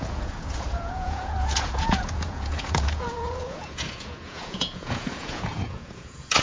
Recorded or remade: remade